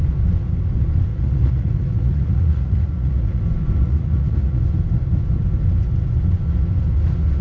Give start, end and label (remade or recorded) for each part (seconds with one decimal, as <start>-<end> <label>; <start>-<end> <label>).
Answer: 0.0-1.1 recorded; 1.1-3.4 remade; 3.4-3.8 recorded; 3.8-4.6 remade; 4.6-7.4 recorded